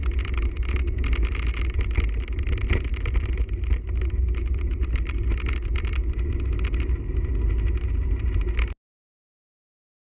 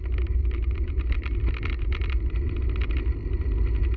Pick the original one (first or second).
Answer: first